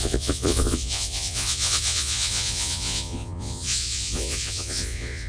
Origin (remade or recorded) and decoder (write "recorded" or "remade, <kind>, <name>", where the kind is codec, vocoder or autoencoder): remade, vocoder, Vocos